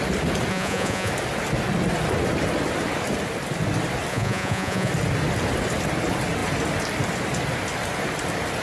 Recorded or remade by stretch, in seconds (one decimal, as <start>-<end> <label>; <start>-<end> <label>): 0.0-0.5 recorded; 0.5-1.1 remade; 1.1-4.1 recorded; 4.1-4.9 remade; 4.9-8.6 recorded

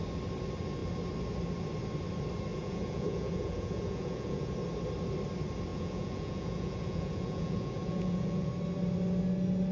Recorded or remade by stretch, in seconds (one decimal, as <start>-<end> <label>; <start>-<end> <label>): 0.0-2.5 recorded; 2.5-4.5 remade; 4.5-5.7 recorded; 5.7-8.5 remade; 8.5-9.7 recorded

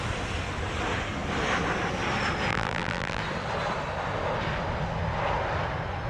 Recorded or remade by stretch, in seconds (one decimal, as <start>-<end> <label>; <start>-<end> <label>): 0.0-2.5 recorded; 2.5-3.2 remade; 3.2-6.1 recorded